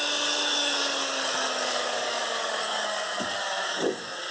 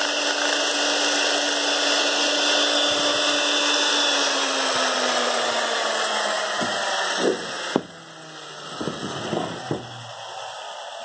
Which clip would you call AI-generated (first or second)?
first